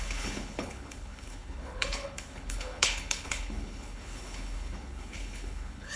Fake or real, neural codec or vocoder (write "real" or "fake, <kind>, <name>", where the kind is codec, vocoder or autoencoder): fake, codec, HILCodec